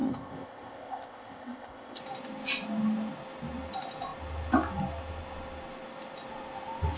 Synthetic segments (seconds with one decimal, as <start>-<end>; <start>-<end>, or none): 0.0-2.0